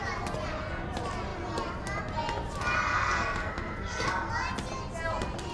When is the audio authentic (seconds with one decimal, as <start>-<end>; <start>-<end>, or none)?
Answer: 0.0-2.9; 4.3-5.5